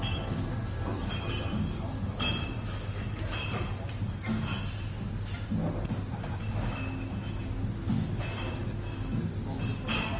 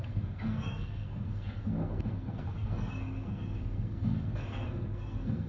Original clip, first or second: first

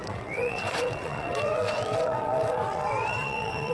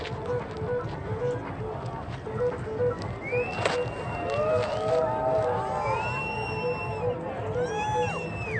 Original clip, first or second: second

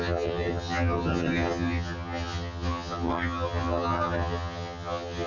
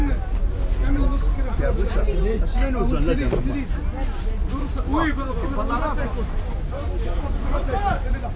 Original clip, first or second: second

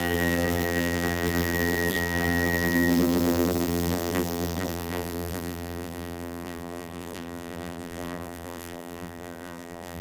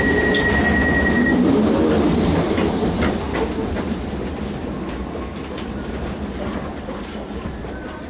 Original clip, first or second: second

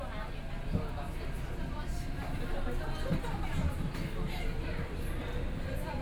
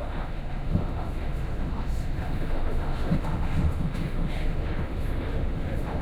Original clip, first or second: first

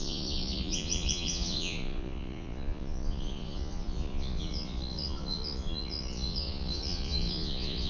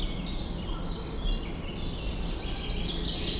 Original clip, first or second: second